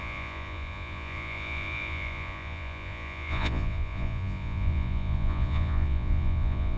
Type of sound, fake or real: fake